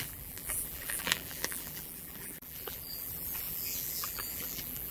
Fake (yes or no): yes